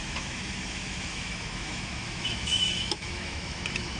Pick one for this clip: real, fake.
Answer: fake